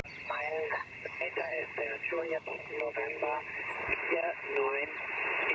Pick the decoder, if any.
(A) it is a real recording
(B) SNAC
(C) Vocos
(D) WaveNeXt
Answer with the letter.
A